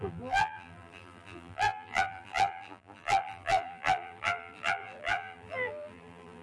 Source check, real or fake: fake